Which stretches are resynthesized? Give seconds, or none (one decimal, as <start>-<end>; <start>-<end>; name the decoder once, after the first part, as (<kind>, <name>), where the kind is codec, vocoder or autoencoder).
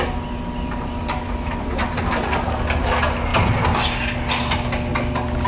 none